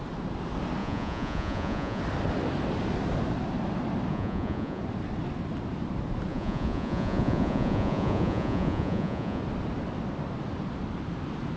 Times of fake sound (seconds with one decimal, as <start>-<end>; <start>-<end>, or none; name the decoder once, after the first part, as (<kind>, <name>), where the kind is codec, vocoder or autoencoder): 0.8-2.0 (vocoder, Vocos); 4.1-4.8; 6.3-9.4